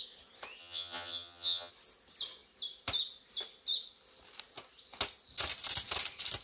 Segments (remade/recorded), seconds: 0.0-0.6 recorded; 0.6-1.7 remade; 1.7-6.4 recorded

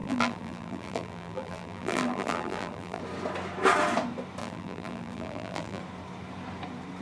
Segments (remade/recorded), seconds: 0.0-3.0 remade; 3.0-4.4 recorded; 4.4-5.8 remade; 5.8-7.0 recorded

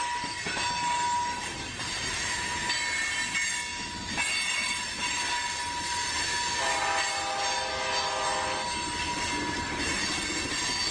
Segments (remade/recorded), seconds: 0.0-10.9 recorded

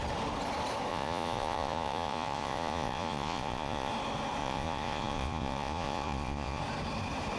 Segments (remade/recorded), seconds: 0.0-0.9 recorded; 0.9-3.9 remade; 3.9-4.4 recorded; 4.4-6.6 remade; 6.6-7.4 recorded